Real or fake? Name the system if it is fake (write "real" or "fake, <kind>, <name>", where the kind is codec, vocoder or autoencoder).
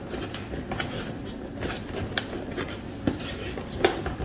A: real